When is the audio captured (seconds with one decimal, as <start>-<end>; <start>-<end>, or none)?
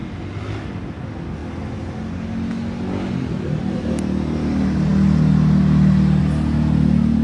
0.0-7.2